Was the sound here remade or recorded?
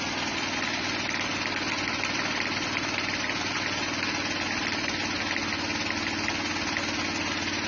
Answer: recorded